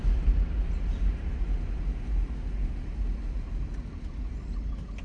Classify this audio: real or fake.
real